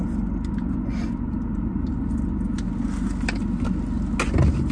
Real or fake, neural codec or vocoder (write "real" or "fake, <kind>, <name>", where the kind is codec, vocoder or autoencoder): real